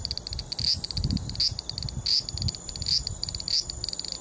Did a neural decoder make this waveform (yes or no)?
no